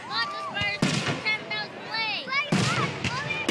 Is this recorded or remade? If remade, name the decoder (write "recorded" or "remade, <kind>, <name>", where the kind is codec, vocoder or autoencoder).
recorded